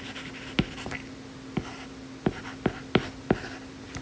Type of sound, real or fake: real